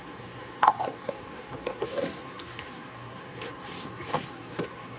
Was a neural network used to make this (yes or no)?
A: yes